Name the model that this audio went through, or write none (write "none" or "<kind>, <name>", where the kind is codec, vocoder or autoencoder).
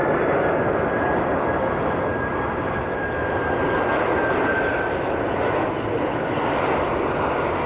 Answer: none